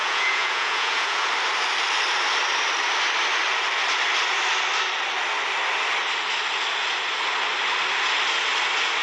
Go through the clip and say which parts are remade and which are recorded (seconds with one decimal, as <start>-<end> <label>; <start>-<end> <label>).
0.0-1.3 remade; 1.3-9.0 recorded